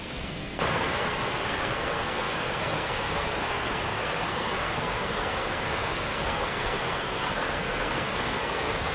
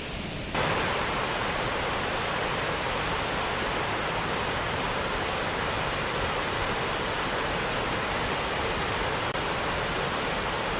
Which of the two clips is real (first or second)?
second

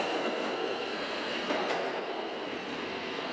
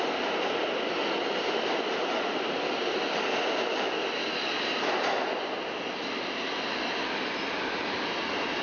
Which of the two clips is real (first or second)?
second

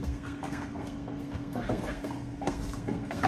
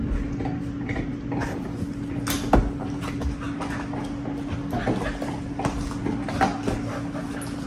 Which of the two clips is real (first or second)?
second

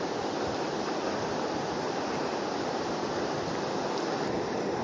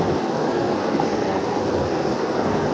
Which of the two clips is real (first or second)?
first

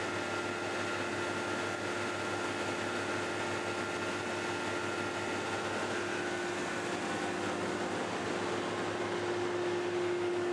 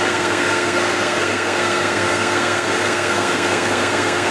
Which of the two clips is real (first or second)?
first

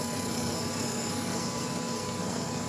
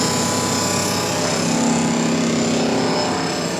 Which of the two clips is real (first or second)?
second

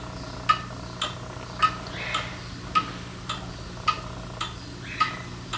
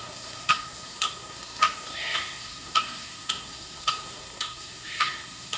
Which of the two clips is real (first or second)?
first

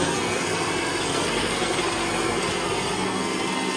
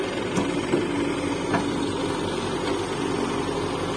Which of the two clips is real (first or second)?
second